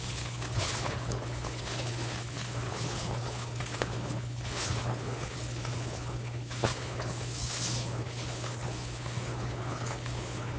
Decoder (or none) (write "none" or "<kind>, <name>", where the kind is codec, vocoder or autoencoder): codec, HILCodec